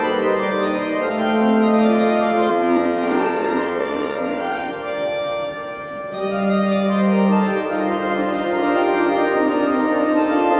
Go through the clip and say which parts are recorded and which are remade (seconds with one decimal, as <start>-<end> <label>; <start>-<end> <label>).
0.0-2.5 recorded; 2.5-4.7 remade; 4.7-10.6 recorded